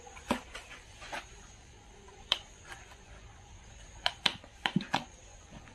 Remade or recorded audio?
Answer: remade